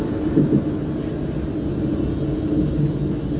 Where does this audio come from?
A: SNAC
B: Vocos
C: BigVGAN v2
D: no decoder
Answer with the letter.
D